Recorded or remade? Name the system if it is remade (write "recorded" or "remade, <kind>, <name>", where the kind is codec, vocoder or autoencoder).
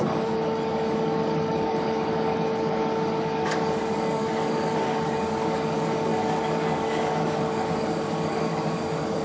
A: remade, codec, DAC